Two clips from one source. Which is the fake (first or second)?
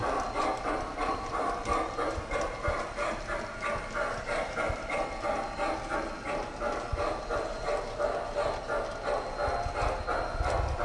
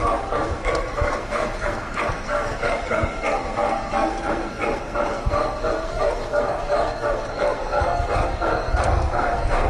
second